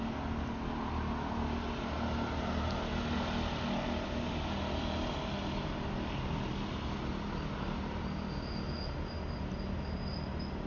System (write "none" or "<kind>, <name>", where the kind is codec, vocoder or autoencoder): none